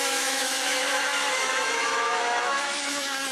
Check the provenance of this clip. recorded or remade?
remade